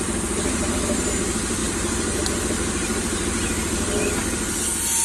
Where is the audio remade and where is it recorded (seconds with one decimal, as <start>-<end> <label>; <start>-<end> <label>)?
0.0-5.0 recorded